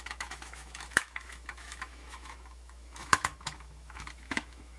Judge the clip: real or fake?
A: fake